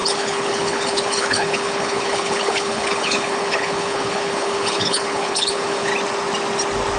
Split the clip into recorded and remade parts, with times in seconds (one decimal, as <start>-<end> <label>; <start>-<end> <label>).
0.0-5.9 remade; 5.9-7.0 recorded